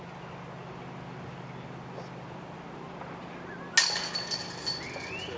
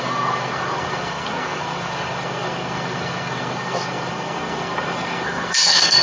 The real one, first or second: first